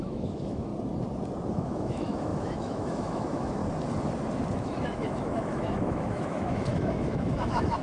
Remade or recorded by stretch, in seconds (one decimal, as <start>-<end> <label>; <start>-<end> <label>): 0.0-0.7 remade; 0.7-1.5 recorded; 1.5-3.6 remade; 3.6-4.5 recorded; 4.5-7.8 remade